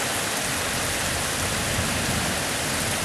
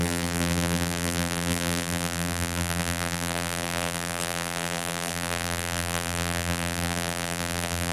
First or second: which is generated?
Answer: second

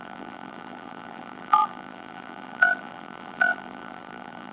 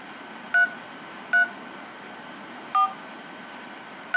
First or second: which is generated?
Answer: first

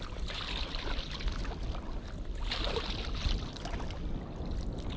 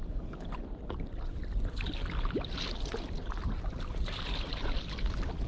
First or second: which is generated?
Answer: second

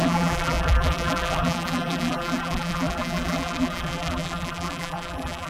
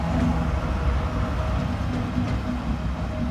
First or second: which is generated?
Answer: first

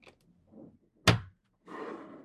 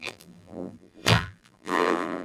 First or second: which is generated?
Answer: second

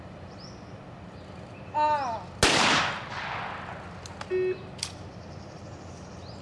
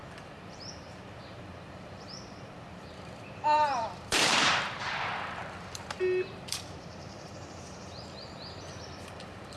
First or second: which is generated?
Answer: second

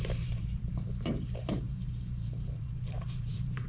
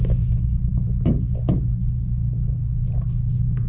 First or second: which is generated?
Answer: first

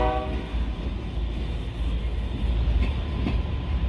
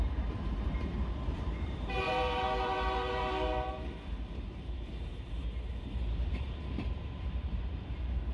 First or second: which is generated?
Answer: second